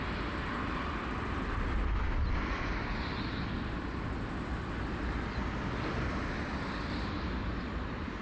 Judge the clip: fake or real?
real